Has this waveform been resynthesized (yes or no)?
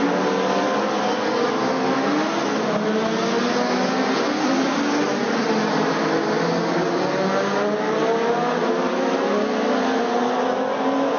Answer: no